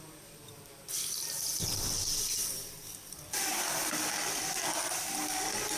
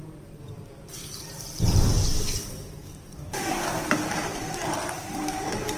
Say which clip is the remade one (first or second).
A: second